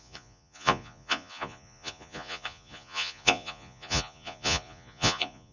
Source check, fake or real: fake